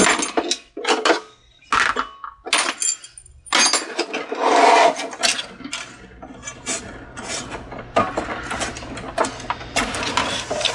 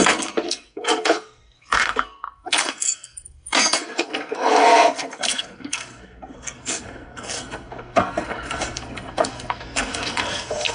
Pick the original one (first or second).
first